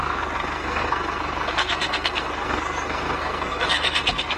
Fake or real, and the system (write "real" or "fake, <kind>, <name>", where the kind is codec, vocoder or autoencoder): fake, codec, SNAC